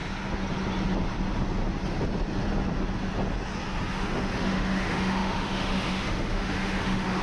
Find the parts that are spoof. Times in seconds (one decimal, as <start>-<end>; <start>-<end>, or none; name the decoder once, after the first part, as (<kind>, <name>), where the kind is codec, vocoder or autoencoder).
3.9-7.2 (autoencoder, DAC-VAE)